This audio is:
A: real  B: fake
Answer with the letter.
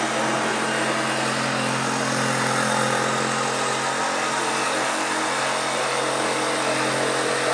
A